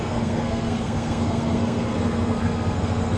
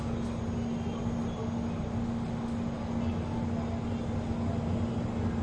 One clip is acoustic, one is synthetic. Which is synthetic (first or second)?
first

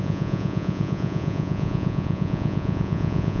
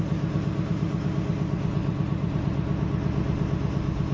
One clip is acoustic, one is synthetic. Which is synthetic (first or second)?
first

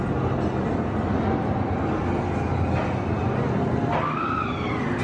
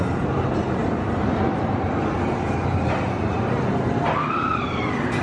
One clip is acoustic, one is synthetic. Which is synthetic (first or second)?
second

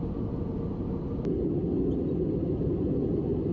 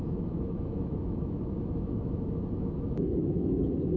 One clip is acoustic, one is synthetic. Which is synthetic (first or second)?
second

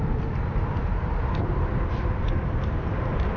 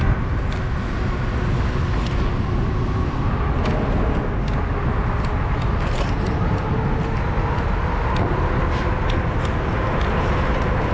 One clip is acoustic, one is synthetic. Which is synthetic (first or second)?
first